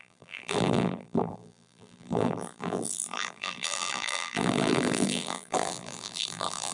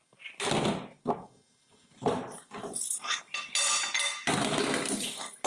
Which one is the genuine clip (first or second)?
second